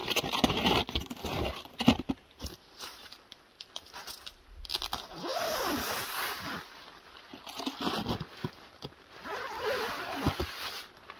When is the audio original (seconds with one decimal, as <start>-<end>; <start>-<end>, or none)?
3.2-11.2